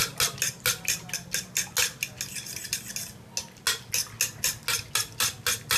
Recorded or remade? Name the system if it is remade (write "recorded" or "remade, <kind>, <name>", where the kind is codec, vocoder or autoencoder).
recorded